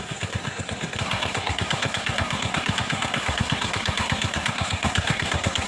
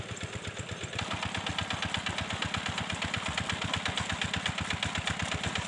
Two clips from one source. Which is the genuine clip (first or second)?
second